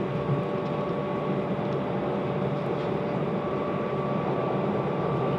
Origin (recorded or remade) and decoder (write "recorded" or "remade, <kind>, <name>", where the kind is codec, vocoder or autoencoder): recorded